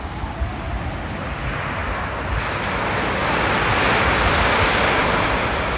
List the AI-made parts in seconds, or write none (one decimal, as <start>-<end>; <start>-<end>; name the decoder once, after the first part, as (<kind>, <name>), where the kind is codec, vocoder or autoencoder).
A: none